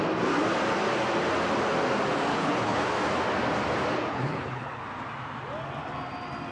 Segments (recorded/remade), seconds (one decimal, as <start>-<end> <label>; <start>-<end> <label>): 0.0-2.3 recorded; 2.3-2.9 remade; 2.9-4.1 recorded; 4.1-4.8 remade; 4.8-6.5 recorded

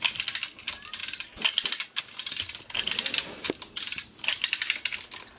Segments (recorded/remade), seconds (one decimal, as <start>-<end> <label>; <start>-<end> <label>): 0.0-3.2 recorded; 3.2-4.9 remade; 4.9-5.4 recorded

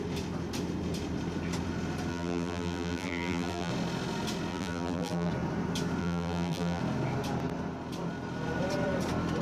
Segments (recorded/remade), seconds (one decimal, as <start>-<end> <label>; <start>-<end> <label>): 0.0-2.1 recorded; 2.1-3.7 remade; 3.7-4.5 recorded; 4.5-5.3 remade; 5.3-6.0 recorded; 6.0-6.8 remade; 6.8-9.4 recorded

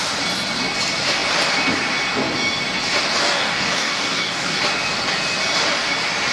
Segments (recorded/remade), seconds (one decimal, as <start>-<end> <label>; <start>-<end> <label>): 0.0-3.2 recorded; 3.2-4.6 remade; 4.6-6.3 recorded

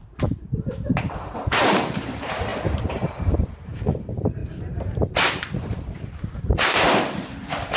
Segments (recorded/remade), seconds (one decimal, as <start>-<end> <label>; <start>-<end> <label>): 0.0-4.4 remade; 4.4-5.6 recorded; 5.6-7.8 remade

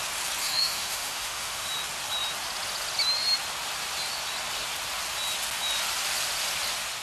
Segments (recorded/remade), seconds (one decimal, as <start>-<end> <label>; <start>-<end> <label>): 0.0-0.4 recorded; 0.4-1.7 remade; 1.7-7.0 recorded